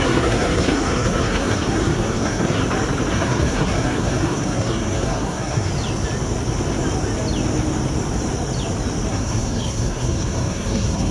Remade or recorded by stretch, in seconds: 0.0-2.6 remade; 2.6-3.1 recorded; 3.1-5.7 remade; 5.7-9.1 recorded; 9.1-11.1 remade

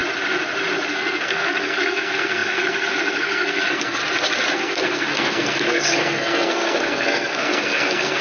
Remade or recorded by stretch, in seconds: 0.0-0.9 recorded; 0.9-4.0 remade; 4.0-4.5 recorded; 4.5-8.2 remade